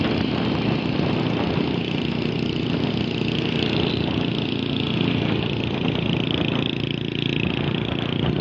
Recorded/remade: recorded